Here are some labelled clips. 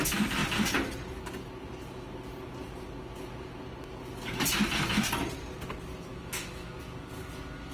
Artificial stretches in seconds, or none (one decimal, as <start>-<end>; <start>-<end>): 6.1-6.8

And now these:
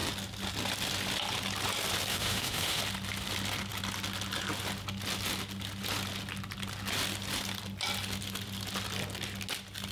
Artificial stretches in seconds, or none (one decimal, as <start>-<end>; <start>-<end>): 2.1-2.8

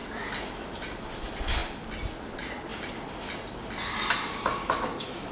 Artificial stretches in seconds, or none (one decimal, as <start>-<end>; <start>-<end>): 4.6-5.3

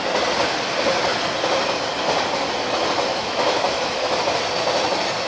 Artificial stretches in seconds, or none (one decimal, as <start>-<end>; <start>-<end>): 3.1-4.2

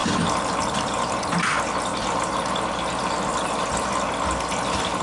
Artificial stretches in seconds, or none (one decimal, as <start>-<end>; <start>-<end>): none

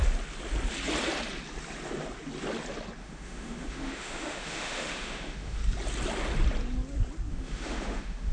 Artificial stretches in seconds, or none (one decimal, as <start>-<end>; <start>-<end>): 3.0-5.6; 7.3-8.3

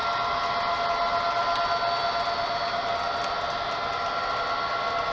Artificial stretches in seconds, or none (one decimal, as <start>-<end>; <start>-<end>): none